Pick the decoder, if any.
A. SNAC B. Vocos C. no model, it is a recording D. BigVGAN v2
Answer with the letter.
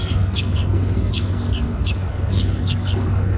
A